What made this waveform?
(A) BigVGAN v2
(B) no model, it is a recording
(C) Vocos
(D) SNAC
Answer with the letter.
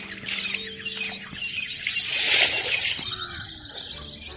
B